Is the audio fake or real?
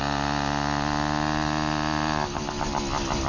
real